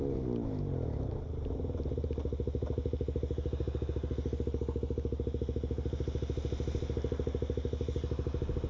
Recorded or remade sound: recorded